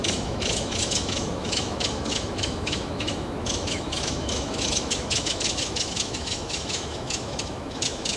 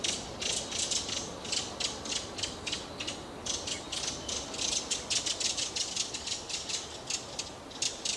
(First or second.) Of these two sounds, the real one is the second